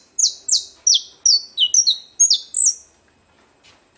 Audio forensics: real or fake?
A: real